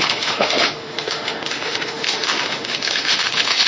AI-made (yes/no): yes